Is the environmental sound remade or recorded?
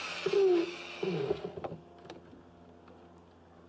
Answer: recorded